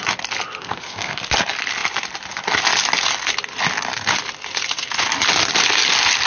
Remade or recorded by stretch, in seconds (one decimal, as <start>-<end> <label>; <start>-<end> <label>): 0.0-0.6 recorded; 0.6-1.2 remade; 1.2-6.3 recorded